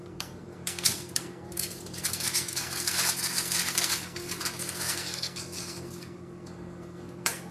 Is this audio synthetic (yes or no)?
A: yes